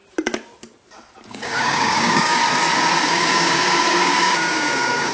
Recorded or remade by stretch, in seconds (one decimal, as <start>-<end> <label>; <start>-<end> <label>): 0.0-1.3 recorded; 1.3-2.4 remade; 2.4-3.1 recorded; 3.1-5.1 remade